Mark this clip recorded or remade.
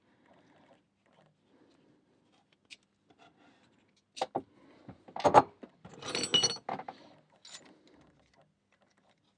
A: recorded